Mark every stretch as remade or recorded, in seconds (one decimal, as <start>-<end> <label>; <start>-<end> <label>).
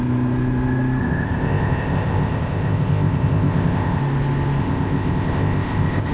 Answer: 0.0-1.0 recorded; 1.0-4.0 remade; 4.0-4.6 recorded; 4.6-6.1 remade